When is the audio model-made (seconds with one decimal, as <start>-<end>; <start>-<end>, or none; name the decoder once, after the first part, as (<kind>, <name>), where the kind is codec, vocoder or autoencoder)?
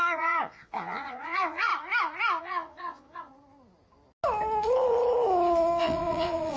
0.0-1.7 (vocoder, Vocos); 2.4-3.3; 5.8-6.6